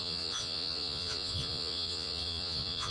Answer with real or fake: fake